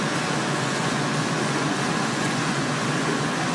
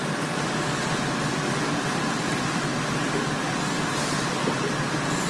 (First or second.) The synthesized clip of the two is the first